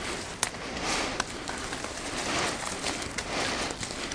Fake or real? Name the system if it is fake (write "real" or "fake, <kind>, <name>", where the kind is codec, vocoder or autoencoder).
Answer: real